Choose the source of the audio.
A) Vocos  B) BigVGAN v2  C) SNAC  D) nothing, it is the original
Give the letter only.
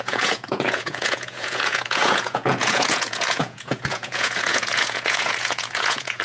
A